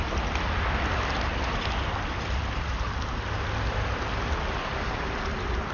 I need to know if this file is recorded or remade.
recorded